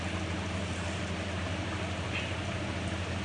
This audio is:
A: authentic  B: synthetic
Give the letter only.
A